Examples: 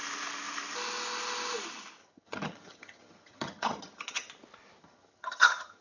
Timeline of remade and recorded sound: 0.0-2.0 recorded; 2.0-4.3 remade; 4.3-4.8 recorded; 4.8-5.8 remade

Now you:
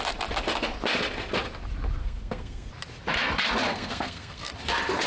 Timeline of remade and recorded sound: 0.0-2.0 recorded; 2.0-2.7 remade; 2.7-3.7 recorded; 3.7-4.5 remade; 4.5-5.1 recorded

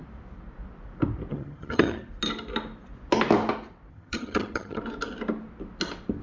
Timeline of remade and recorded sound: 0.0-1.3 recorded; 1.3-2.1 remade; 2.1-3.9 recorded; 3.9-4.8 remade; 4.8-6.2 recorded

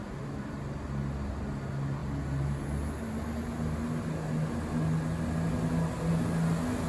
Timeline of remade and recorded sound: 0.0-0.6 remade; 0.6-6.9 recorded

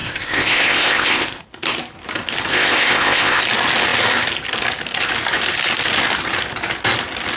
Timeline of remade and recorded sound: 0.0-1.4 remade; 1.4-2.5 recorded; 2.5-3.4 remade; 3.4-7.4 recorded